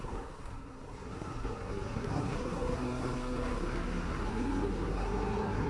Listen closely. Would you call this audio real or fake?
fake